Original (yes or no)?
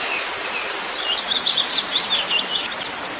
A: yes